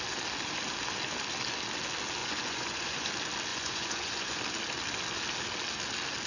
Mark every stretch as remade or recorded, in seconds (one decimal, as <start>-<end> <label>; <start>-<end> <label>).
0.0-2.2 recorded; 2.2-3.1 remade; 3.1-3.5 recorded; 3.5-4.4 remade; 4.4-6.3 recorded